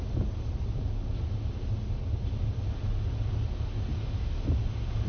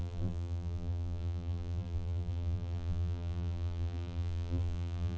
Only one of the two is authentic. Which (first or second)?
first